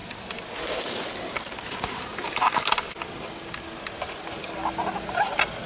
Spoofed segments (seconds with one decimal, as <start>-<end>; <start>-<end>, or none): none

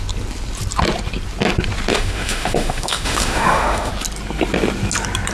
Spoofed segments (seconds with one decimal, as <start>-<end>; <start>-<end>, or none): 1.9-3.9

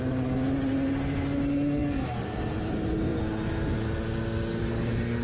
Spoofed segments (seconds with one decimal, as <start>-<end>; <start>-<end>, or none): none

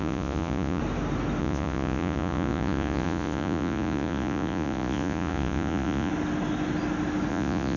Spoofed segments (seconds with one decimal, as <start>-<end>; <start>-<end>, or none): 0.0-0.8; 1.4-6.1; 7.3-7.8

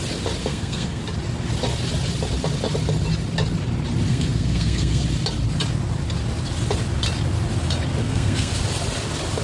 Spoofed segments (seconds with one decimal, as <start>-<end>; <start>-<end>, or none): 0.4-1.0; 4.1-5.0; 8.0-8.5

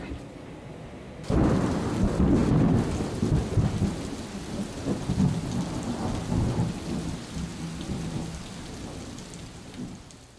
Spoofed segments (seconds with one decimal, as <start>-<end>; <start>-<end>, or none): none

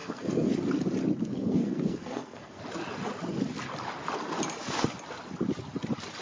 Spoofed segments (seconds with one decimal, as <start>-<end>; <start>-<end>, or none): 0.0-0.5; 1.2-2.6

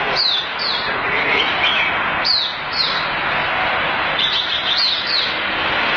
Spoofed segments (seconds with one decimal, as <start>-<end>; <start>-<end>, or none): 0.4-1.5